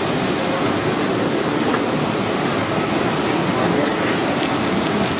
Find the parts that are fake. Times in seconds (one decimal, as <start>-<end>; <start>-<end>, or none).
none